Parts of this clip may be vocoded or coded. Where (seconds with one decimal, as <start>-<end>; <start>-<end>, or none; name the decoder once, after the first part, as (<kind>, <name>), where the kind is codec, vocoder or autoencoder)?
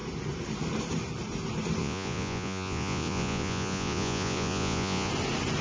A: 1.8-5.1 (vocoder, Vocos)